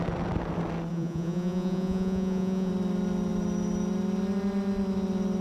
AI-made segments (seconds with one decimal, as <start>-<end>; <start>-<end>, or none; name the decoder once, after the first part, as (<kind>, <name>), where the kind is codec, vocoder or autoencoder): 0.9-2.7 (vocoder, Vocos)